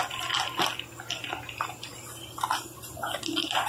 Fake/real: real